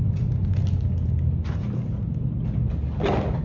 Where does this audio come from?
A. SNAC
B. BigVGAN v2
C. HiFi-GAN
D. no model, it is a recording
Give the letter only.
D